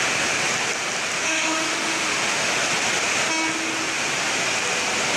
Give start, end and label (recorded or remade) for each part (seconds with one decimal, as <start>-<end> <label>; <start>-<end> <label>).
0.0-1.2 recorded; 1.2-2.6 remade; 2.6-5.2 recorded